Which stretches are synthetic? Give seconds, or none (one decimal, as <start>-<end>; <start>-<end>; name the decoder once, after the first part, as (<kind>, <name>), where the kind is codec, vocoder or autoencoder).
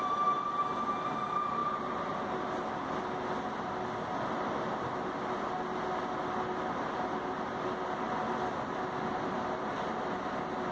none